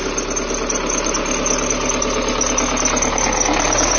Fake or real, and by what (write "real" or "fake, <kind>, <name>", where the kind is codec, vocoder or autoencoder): real